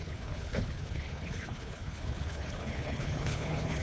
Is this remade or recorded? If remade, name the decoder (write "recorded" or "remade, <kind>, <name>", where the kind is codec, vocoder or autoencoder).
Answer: remade, codec, HILCodec